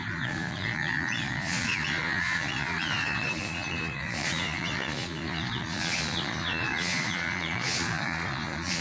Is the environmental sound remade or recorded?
remade